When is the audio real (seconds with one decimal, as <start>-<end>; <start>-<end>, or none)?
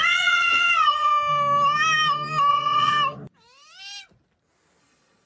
1.1-2.5; 2.9-4.8